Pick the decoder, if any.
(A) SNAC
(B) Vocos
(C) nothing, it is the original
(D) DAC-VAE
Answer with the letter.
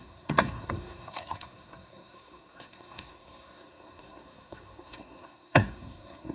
A